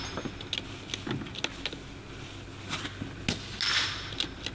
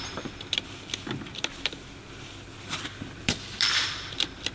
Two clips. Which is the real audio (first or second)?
first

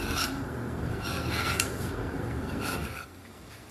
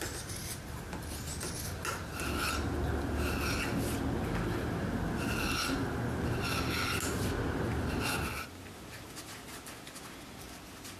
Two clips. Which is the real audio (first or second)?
second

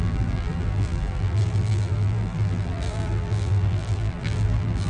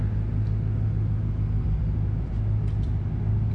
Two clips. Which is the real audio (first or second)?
second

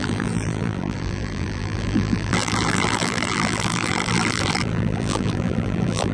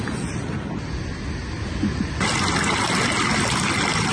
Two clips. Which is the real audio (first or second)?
second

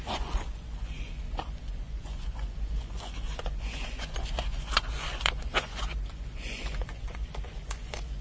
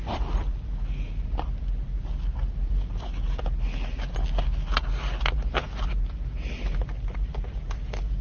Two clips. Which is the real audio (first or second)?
second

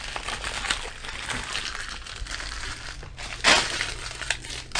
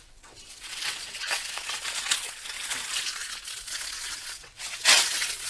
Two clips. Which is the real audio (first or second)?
first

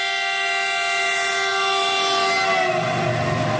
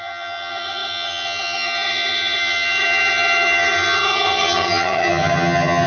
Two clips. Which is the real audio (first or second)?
first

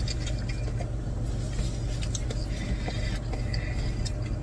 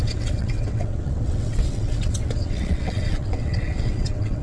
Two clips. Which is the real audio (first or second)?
first